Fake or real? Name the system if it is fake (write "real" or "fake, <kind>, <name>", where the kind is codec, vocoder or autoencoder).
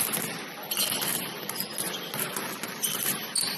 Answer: fake, vocoder, BigVGAN v2